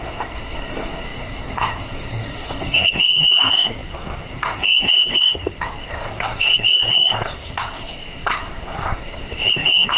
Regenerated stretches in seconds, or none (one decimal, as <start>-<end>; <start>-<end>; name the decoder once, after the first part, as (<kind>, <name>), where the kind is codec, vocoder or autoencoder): 0.0-10.0 (codec, SNAC)